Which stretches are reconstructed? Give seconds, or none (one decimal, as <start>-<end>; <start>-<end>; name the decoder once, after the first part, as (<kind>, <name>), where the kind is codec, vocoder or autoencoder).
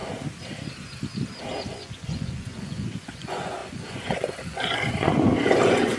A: 1.7-6.0 (vocoder, Vocos)